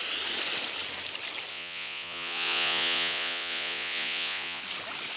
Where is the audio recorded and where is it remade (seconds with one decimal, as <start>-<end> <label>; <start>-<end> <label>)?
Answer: 0.0-1.5 recorded; 1.5-4.6 remade; 4.6-5.2 recorded